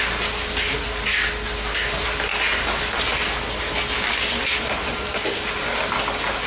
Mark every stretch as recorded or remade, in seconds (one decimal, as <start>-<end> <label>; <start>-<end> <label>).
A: 0.0-6.5 recorded